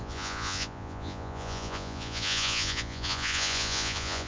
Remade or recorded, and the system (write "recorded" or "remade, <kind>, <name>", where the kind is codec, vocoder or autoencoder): remade, vocoder, Vocos